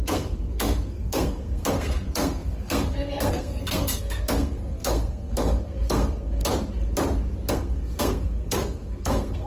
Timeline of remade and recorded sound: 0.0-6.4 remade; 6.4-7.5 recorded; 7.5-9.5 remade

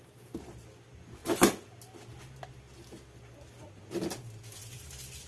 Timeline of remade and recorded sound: 0.0-5.3 recorded

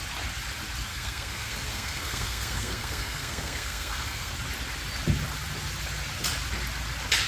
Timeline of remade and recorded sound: 0.0-0.9 recorded; 0.9-4.3 remade; 4.3-7.3 recorded

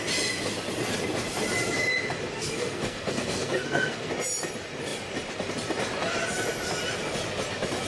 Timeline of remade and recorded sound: 0.0-2.4 recorded; 2.4-4.1 remade; 4.1-7.9 recorded

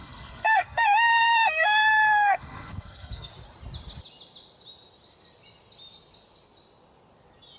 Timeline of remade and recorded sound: 0.0-3.3 remade; 3.3-7.6 recorded

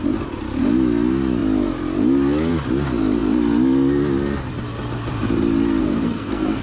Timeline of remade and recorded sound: 0.0-5.8 recorded; 5.8-6.6 remade